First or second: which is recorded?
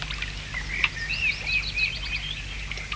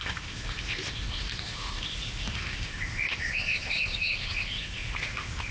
first